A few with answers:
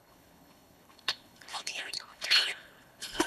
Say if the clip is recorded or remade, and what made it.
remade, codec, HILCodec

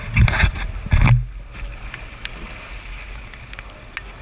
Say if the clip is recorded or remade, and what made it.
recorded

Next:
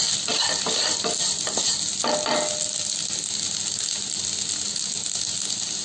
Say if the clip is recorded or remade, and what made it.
recorded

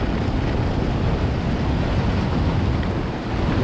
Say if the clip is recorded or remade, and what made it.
recorded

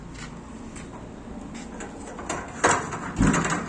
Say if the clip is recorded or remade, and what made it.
recorded